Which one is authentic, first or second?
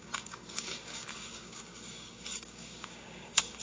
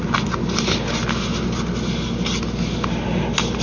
second